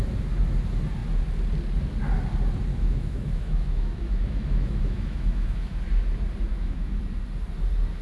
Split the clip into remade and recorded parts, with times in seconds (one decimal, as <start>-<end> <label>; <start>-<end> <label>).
0.0-2.7 recorded; 2.7-5.8 remade; 5.8-6.5 recorded; 6.5-7.0 remade; 7.0-8.0 recorded